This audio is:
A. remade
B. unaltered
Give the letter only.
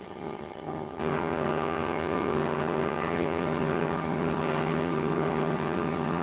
A